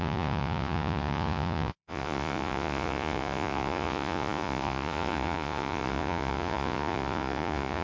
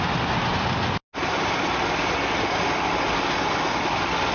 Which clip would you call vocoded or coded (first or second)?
first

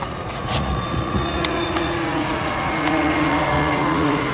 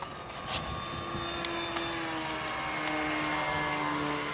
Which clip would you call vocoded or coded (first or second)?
first